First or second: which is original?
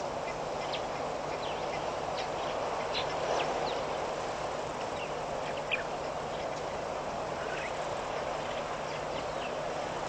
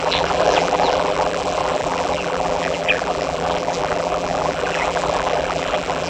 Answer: first